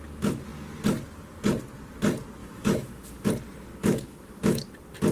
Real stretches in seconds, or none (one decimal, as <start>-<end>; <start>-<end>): 0.0-2.4; 3.3-3.8; 4.6-5.1